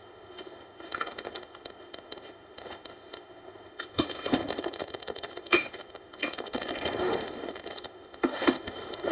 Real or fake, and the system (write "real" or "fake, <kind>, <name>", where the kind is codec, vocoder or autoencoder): fake, autoencoder, DAC-VAE